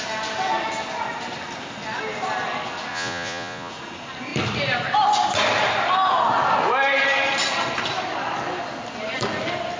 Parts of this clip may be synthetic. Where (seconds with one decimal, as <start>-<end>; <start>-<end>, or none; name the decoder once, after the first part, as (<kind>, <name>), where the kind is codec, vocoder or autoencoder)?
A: 2.9-3.7 (vocoder, Vocos)